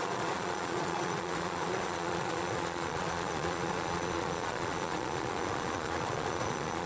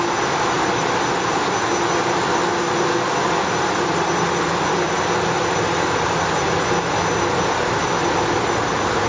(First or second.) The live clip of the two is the second